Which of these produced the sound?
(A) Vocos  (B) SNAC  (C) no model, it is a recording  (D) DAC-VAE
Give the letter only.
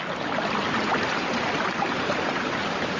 C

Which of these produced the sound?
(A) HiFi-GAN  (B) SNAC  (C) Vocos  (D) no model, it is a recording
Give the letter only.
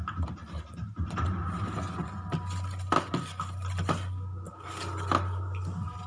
D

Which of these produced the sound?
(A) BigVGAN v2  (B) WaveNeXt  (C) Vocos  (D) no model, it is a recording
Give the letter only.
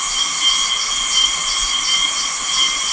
D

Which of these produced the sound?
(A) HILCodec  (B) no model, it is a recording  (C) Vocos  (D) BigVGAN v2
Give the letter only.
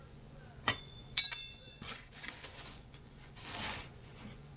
C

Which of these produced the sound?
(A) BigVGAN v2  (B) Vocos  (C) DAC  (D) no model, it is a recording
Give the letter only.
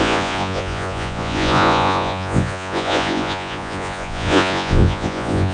B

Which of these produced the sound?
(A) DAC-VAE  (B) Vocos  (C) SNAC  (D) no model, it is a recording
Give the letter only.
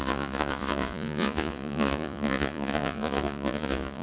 B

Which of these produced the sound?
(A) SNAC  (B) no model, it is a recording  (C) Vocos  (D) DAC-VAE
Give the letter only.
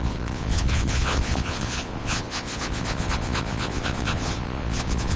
C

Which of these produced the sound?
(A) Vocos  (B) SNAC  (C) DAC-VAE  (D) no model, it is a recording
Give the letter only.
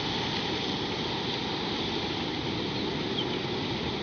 D